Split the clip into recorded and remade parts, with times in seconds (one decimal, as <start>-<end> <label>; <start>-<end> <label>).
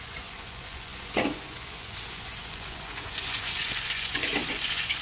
0.0-5.0 remade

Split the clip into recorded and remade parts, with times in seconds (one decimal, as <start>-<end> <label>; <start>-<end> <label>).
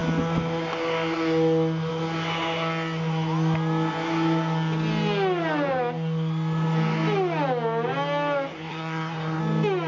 0.0-8.5 recorded; 8.5-9.4 remade; 9.4-9.9 recorded